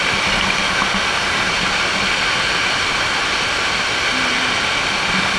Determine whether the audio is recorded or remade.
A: recorded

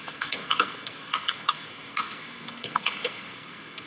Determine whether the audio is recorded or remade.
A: remade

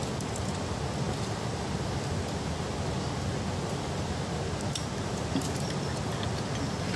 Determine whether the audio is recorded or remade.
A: recorded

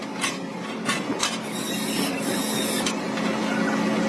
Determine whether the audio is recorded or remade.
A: recorded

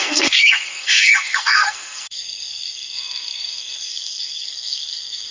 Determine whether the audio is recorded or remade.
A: remade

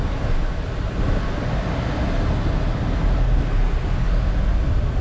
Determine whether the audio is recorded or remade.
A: recorded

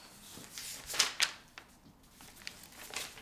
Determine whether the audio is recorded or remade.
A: recorded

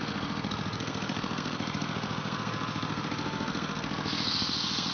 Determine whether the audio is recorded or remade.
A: remade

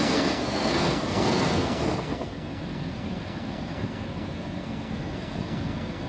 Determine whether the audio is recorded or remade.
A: remade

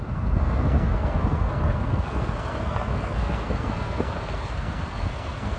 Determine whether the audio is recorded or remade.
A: remade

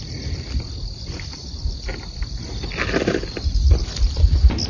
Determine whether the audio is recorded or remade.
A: recorded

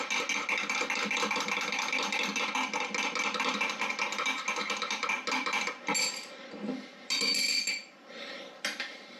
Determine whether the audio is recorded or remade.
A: recorded